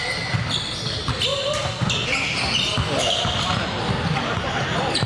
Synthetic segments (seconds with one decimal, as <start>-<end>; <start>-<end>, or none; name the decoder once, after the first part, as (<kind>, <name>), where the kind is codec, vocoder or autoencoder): none